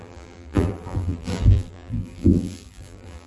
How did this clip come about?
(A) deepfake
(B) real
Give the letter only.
A